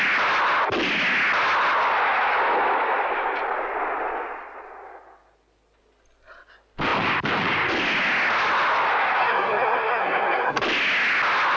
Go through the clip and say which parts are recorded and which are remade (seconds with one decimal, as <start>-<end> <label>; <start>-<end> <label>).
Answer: 0.0-9.2 recorded; 9.2-10.6 remade; 10.6-11.6 recorded